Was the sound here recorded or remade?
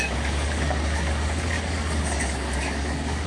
remade